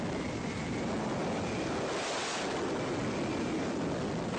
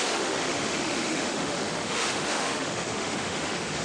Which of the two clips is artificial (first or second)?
second